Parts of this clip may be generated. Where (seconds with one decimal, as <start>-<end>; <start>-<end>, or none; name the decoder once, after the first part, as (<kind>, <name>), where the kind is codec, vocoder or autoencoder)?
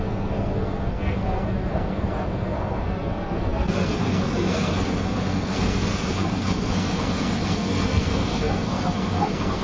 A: 0.0-9.6 (codec, SNAC)